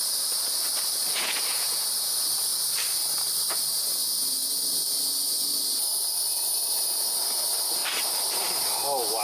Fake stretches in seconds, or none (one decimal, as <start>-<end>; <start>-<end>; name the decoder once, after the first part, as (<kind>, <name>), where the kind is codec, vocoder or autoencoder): 1.1-1.9 (vocoder, Vocos)